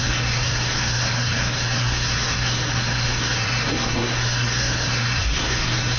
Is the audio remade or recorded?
remade